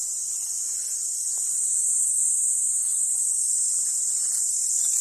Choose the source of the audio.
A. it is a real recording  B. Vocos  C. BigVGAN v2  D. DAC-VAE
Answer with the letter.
A